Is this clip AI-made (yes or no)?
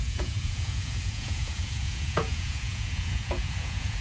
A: yes